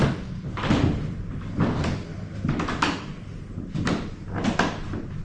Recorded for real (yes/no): yes